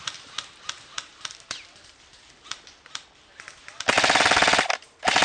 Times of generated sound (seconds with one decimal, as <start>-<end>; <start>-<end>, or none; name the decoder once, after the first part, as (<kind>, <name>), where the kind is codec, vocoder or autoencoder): none